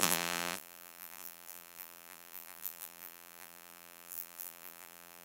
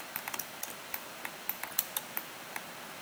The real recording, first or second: second